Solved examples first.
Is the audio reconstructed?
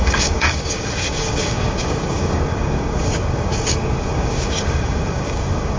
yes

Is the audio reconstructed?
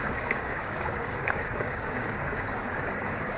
yes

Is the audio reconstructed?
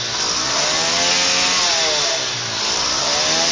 no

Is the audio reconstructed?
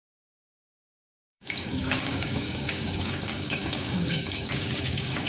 yes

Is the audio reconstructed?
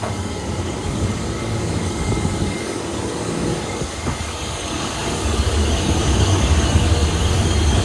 yes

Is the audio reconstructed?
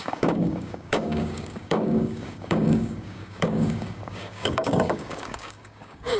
yes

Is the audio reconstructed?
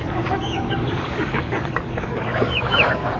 yes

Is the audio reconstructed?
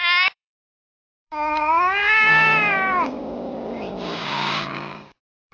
yes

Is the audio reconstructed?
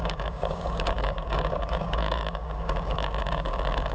yes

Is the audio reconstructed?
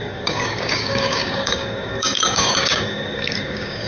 yes